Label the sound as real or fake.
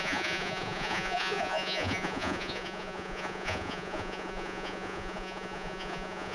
fake